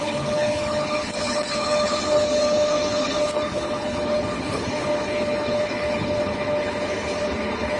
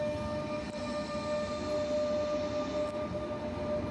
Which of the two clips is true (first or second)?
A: second